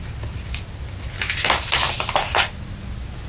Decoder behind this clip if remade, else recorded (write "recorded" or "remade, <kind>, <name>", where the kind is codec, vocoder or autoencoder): recorded